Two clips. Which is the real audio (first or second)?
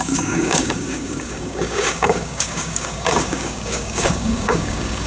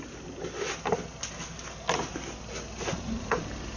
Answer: second